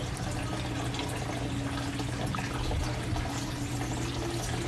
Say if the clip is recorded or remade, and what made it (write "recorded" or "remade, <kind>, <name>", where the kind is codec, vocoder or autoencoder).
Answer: recorded